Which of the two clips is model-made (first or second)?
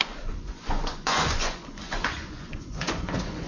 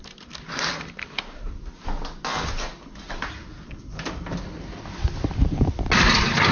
first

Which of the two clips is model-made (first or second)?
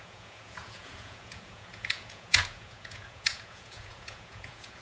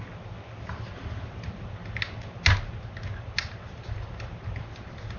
first